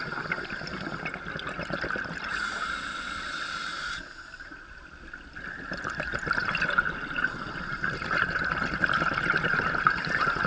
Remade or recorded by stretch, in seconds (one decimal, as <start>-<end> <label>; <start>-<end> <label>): 0.0-10.5 recorded